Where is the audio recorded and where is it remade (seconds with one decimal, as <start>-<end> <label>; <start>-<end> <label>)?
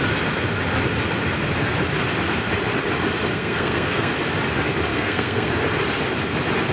0.0-3.3 recorded; 3.3-4.1 remade; 4.1-4.9 recorded; 4.9-5.5 remade; 5.5-6.7 recorded